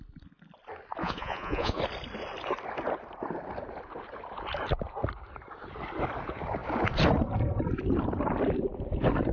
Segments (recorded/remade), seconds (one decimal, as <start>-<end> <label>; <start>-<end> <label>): 0.0-1.0 recorded; 1.0-1.8 remade; 1.8-9.3 recorded